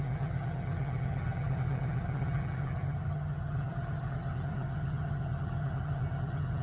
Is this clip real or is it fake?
fake